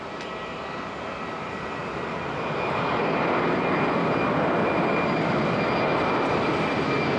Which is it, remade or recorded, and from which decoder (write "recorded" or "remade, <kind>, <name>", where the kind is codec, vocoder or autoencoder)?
recorded